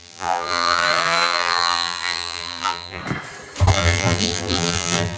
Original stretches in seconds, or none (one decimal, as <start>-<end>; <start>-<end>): 3.0-3.7